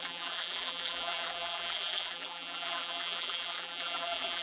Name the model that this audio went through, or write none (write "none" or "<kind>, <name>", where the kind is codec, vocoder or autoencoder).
vocoder, BigVGAN v2